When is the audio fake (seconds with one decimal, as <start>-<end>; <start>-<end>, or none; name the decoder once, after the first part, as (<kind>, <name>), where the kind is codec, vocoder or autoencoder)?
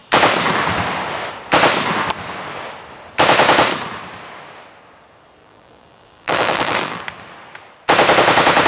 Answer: 5.4-7.0 (vocoder, BigVGAN v2)